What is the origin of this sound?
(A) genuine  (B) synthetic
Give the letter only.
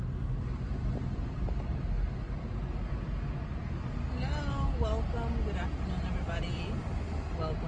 A